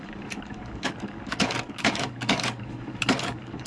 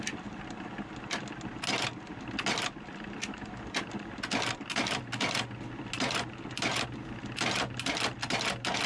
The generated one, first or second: first